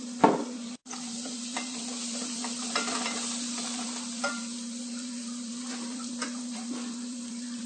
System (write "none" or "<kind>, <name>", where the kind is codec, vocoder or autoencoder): vocoder, BigVGAN v2